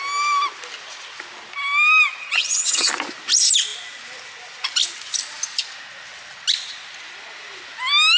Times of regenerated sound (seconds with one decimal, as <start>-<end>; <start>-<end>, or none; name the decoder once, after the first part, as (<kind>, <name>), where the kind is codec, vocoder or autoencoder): 2.2-2.9 (vocoder, HiFi-GAN)